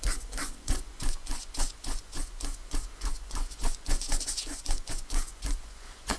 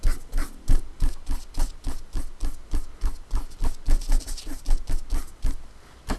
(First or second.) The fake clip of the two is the first